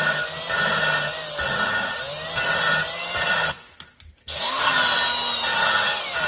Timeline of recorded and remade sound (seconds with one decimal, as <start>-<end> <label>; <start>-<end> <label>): 0.0-4.2 recorded; 4.2-4.7 remade; 4.7-6.3 recorded